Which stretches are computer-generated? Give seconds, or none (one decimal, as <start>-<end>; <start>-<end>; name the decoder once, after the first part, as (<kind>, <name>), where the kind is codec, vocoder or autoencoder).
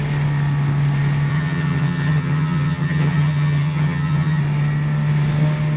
1.3-4.4 (vocoder, HiFi-GAN)